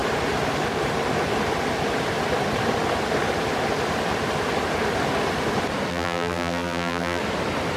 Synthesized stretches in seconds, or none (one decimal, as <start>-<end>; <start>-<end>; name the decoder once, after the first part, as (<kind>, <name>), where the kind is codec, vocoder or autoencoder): 5.9-7.2 (vocoder, BigVGAN v2)